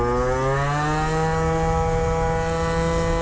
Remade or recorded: recorded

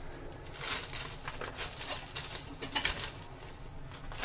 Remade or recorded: recorded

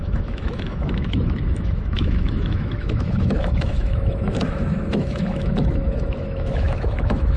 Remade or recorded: remade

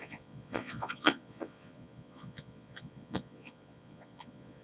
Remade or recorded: remade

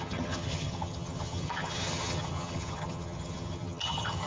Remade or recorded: remade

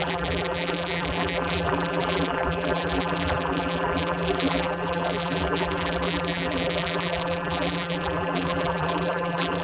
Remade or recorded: remade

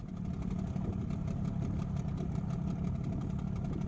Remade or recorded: recorded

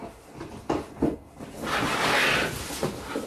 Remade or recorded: recorded